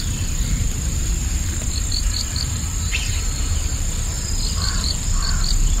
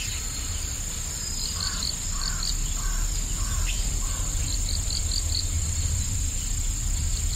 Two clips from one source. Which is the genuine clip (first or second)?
second